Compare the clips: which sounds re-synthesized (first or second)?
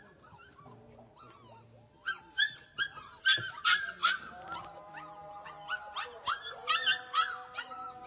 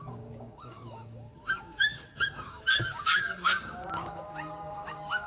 second